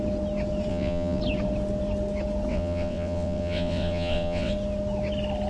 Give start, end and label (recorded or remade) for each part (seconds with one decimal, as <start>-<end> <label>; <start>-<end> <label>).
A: 0.0-0.7 recorded; 0.7-1.2 remade; 1.2-2.5 recorded; 2.5-4.5 remade; 4.5-5.5 recorded